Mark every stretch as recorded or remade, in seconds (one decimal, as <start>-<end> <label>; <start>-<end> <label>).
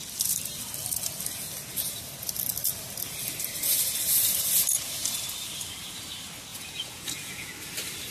0.0-6.5 recorded; 6.5-7.5 remade; 7.5-8.1 recorded